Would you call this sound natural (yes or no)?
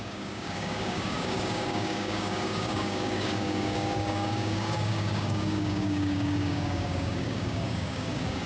no